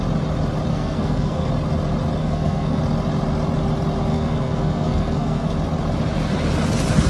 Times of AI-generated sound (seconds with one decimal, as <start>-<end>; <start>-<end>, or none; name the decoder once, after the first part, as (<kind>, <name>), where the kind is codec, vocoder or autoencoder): 0.7-1.5 (codec, SNAC); 2.2-2.8; 4.1-5.5